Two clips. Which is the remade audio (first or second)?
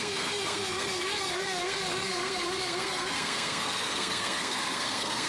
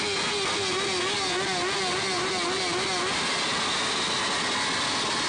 first